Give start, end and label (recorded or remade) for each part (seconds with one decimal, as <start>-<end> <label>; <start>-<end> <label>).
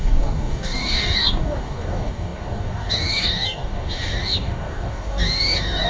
0.0-5.9 remade